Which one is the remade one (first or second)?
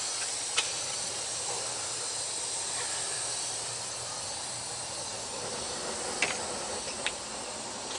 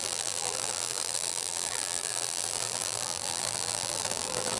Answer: second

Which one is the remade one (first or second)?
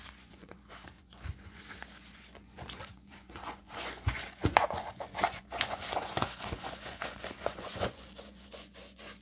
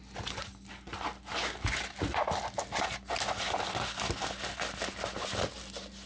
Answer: first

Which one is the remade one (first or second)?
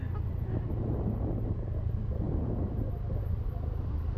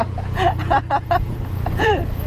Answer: second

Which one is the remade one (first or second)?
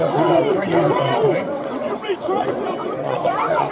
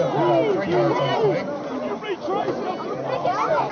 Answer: first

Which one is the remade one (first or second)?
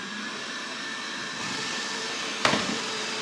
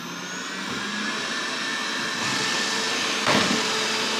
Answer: first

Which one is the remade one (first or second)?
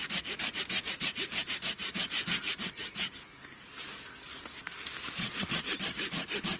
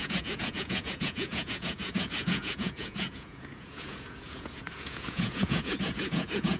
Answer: second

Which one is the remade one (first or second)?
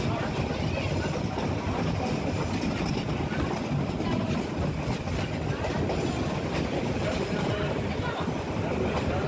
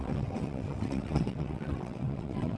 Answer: second